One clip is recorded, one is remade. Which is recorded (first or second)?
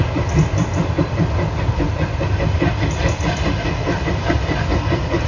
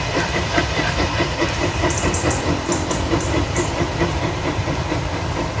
first